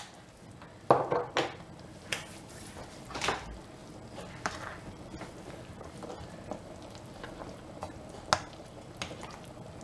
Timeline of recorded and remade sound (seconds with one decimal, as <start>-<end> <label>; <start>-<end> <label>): 0.0-9.8 recorded

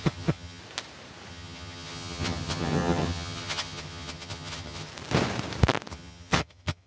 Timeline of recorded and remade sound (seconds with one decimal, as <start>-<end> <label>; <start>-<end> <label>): 0.0-0.6 remade; 0.6-1.3 recorded; 1.3-4.9 remade; 4.9-5.9 recorded; 5.9-6.9 remade

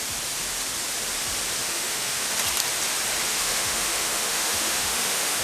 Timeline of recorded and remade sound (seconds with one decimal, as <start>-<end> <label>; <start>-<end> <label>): 0.0-1.6 recorded; 1.6-2.3 remade; 2.3-3.3 recorded; 3.3-5.4 remade

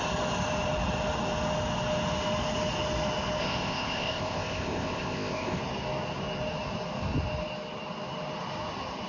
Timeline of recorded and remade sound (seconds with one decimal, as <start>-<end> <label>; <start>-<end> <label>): 0.0-3.4 recorded; 3.4-5.6 remade; 5.6-9.1 recorded

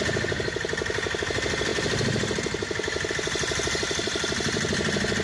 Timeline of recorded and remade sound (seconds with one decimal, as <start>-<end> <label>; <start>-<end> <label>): 0.0-5.2 recorded

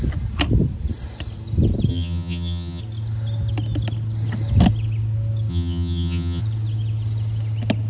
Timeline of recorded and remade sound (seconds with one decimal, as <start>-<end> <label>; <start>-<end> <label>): 0.0-1.9 recorded; 1.9-2.8 remade; 2.8-5.5 recorded; 5.5-6.4 remade; 6.4-7.9 recorded